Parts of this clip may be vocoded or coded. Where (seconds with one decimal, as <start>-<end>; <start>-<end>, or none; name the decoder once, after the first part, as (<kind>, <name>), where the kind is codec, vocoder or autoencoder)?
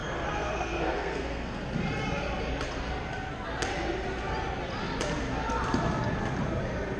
0.0-1.6 (codec, SNAC)